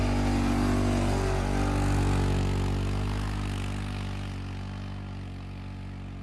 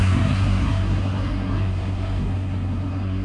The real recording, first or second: first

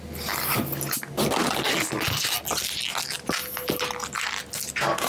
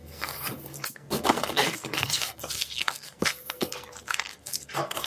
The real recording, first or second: first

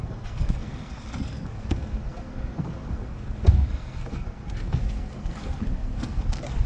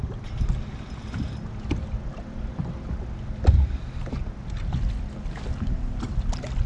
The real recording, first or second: second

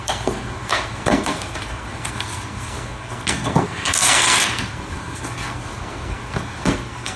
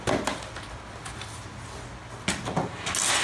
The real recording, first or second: second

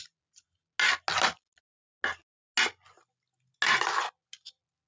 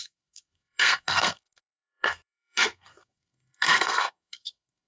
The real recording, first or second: first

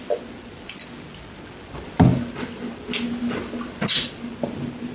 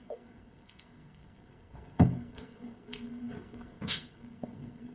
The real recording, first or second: first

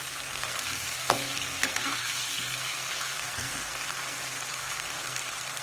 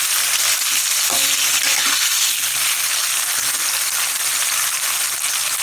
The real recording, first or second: second